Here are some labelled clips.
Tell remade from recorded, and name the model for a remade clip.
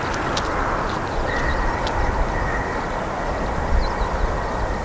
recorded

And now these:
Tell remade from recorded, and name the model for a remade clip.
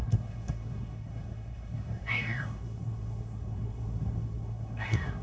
remade, codec, SNAC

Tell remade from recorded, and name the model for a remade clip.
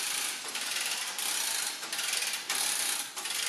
recorded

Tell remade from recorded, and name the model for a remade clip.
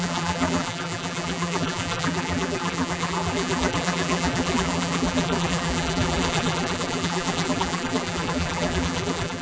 remade, vocoder, BigVGAN v2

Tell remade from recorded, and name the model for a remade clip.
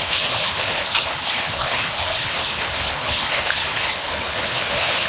remade, codec, HILCodec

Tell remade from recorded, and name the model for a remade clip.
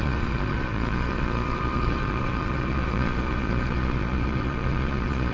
remade, vocoder, Vocos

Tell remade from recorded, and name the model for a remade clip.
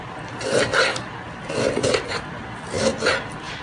recorded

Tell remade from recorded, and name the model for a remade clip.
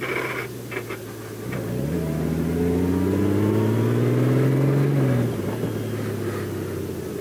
recorded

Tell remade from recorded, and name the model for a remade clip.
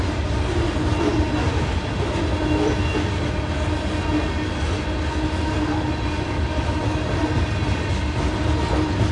recorded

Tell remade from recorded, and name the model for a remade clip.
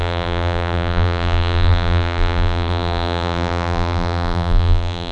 remade, vocoder, BigVGAN v2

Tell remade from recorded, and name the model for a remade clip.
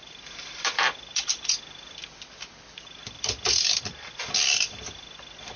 remade, vocoder, BigVGAN v2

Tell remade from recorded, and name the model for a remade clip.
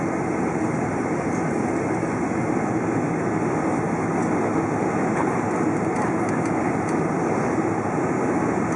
recorded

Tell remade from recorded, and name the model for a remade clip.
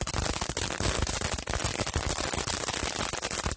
recorded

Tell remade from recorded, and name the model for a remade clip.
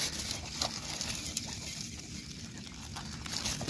recorded